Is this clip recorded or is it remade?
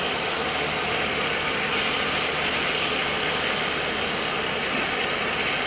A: recorded